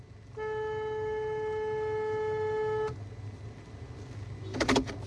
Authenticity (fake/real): real